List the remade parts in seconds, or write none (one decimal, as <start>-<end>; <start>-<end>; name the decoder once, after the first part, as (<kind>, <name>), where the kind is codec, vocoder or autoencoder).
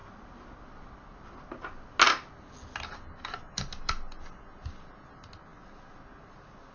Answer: none